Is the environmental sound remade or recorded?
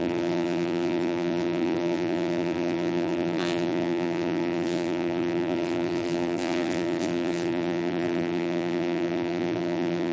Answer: remade